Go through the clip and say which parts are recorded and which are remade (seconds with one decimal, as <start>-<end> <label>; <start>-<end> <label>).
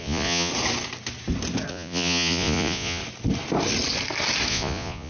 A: 0.0-0.5 remade; 0.5-1.7 recorded; 1.7-3.0 remade; 3.0-4.5 recorded; 4.5-5.1 remade